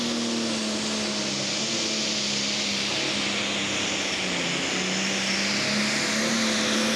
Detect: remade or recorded recorded